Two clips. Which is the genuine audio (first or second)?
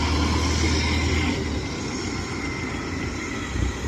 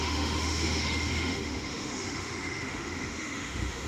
first